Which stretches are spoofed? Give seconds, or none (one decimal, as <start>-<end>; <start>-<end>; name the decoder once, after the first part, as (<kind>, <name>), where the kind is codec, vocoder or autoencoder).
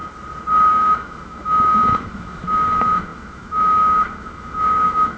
0.7-5.2 (autoencoder, DAC-VAE)